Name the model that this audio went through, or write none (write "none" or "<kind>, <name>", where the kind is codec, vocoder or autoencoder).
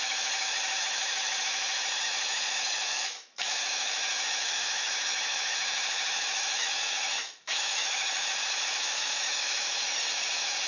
autoencoder, DAC-VAE